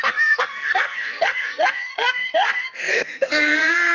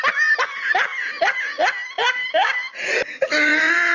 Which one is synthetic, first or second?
first